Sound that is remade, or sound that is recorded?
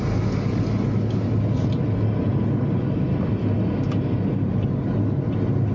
recorded